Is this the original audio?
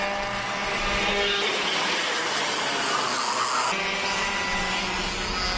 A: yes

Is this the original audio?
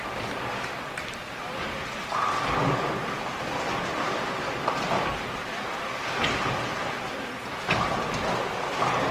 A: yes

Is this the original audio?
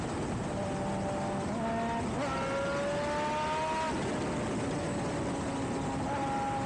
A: yes